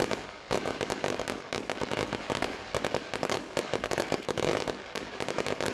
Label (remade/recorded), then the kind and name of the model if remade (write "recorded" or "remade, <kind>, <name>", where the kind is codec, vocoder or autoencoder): remade, codec, DAC